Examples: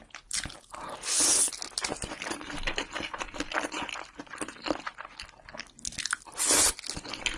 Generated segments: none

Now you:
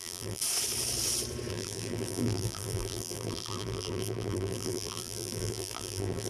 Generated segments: 0.0-0.4 (vocoder, BigVGAN v2); 1.5-6.3

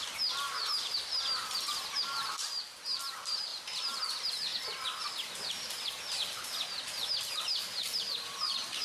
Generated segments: none

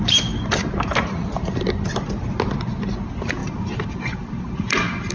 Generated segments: 3.4-5.1 (vocoder, BigVGAN v2)

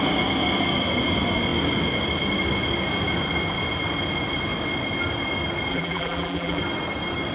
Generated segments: 5.7-6.6 (vocoder, BigVGAN v2)

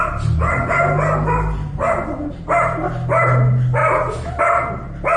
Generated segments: none